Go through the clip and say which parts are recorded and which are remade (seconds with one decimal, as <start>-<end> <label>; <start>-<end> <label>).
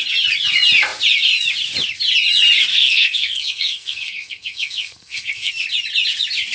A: 0.0-2.7 recorded; 2.7-5.5 remade; 5.5-6.5 recorded